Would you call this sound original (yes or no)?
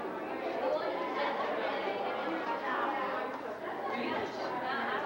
yes